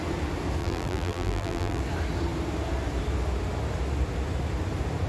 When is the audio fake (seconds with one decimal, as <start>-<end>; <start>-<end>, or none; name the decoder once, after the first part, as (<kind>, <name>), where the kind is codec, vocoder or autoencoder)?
0.6-1.8 (vocoder, BigVGAN v2)